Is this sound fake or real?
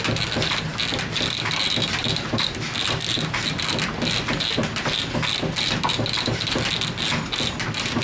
real